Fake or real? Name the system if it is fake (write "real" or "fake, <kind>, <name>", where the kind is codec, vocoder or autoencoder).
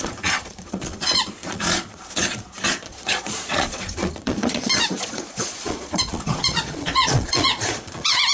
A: fake, vocoder, Vocos